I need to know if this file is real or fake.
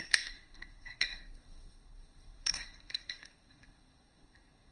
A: fake